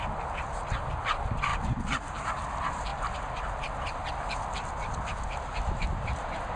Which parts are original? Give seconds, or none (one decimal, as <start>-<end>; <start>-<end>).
0.0-1.5; 2.3-2.9; 4.1-6.6